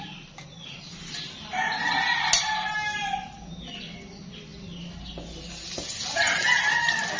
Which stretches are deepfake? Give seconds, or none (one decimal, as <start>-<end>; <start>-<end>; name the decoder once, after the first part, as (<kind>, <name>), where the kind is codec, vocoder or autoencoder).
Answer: none